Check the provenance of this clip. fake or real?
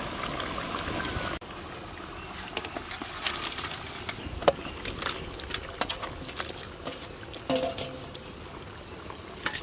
real